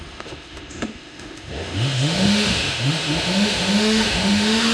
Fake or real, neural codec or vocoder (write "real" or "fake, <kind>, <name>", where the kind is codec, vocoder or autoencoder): fake, autoencoder, DAC-VAE